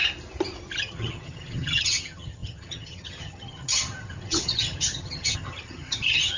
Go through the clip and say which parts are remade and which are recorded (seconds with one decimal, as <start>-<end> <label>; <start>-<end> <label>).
0.0-0.8 recorded; 0.8-6.4 remade